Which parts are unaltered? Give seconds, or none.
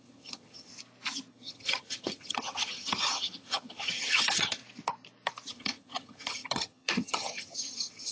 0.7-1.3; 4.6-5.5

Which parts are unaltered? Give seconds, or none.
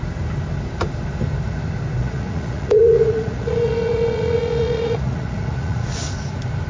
0.0-2.0; 6.0-6.7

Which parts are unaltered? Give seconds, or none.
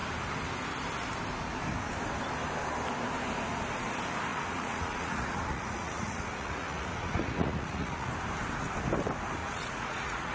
0.0-4.3; 8.1-9.4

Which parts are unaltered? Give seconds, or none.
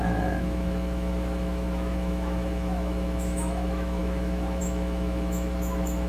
none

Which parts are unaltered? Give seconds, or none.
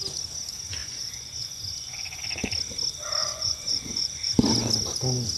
0.0-0.8; 2.2-3.2; 4.3-5.4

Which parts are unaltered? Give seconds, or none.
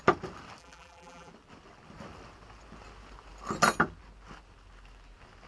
0.0-0.6; 1.3-5.5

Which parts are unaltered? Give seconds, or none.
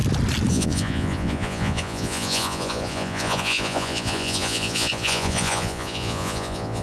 0.0-0.5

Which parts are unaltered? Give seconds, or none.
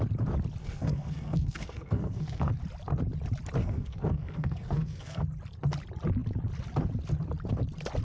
0.0-0.6; 2.5-3.6; 5.2-8.0